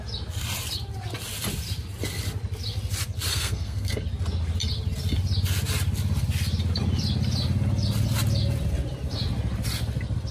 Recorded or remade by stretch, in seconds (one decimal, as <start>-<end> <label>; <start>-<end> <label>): 0.0-3.3 recorded; 3.3-4.0 remade; 4.0-10.3 recorded